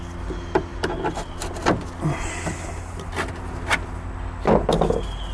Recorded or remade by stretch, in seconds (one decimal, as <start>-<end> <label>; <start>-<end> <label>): 0.0-5.3 recorded